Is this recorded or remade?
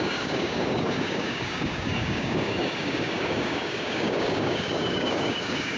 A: remade